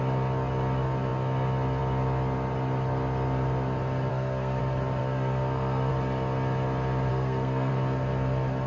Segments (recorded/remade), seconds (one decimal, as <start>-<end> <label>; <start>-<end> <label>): 0.0-4.1 recorded; 4.1-4.6 remade; 4.6-5.0 recorded; 5.0-5.9 remade; 5.9-7.1 recorded; 7.1-7.7 remade; 7.7-8.7 recorded